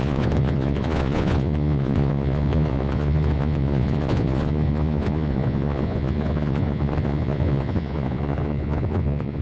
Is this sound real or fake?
fake